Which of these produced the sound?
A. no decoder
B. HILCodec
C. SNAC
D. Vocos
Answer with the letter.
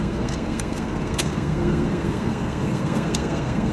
C